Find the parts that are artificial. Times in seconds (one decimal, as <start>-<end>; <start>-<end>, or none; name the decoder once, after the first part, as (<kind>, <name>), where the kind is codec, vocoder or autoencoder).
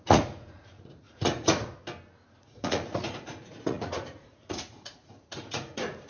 0.0-1.7 (vocoder, Vocos); 2.4-6.1